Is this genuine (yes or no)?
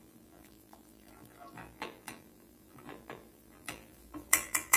no